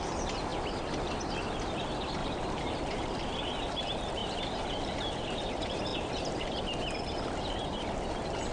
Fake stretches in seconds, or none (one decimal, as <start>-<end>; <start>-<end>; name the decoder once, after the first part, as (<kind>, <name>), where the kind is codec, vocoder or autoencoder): 2.2-3.4 (vocoder, BigVGAN v2); 4.2-5.4; 5.9-6.6